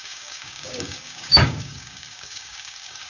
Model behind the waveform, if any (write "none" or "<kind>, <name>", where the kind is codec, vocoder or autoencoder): codec, DAC